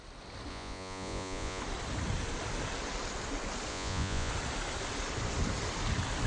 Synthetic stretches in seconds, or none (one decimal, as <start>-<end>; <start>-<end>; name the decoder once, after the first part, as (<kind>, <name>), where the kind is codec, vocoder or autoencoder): 0.5-1.6 (vocoder, Vocos); 3.7-4.3